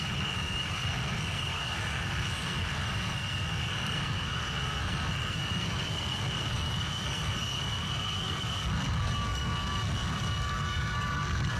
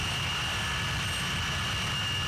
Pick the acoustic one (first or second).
second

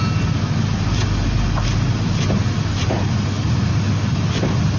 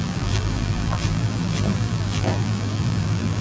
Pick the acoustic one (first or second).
first